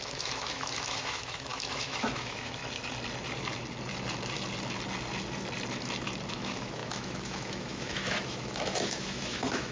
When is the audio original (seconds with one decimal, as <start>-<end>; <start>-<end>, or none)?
2.6-6.3